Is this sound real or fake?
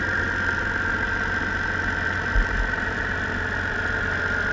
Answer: real